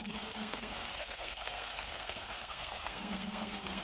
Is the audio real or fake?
fake